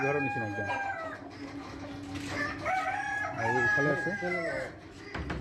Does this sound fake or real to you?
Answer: real